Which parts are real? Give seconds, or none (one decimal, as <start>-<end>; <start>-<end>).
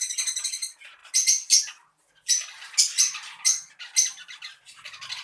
0.5-5.2